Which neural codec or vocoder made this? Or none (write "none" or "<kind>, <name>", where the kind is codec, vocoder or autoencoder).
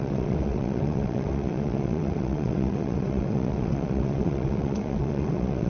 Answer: vocoder, WaveNeXt